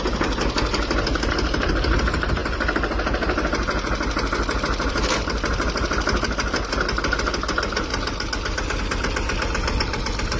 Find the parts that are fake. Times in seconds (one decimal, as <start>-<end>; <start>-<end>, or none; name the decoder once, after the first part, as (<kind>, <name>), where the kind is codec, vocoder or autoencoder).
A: none

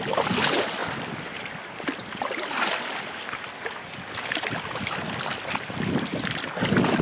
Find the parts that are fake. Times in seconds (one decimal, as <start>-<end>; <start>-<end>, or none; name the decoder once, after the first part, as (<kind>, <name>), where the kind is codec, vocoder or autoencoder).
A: none

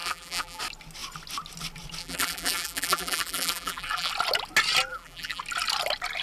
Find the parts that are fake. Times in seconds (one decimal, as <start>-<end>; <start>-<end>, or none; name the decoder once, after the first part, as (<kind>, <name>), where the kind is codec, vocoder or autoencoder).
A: 0.0-0.6 (vocoder, BigVGAN v2); 2.0-4.1; 4.9-5.4

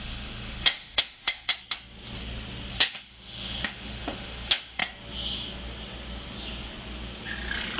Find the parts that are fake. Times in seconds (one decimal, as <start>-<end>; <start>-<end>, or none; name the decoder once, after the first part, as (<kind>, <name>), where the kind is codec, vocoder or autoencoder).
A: 0.0-1.5 (autoencoder, DAC-VAE); 2.7-4.8

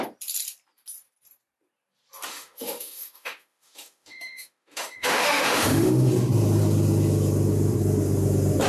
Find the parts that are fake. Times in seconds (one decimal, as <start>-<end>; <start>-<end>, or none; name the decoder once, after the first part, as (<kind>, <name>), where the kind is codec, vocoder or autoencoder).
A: 2.3-6.1 (autoencoder, DAC-VAE)

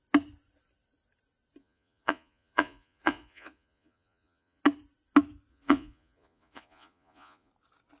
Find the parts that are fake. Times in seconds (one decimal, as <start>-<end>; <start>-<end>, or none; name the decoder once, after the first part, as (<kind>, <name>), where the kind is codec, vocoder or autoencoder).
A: 1.6-4.6 (vocoder, Vocos); 5.5-7.5